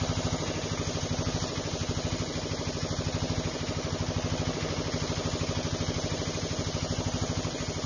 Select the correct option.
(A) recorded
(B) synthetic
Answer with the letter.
A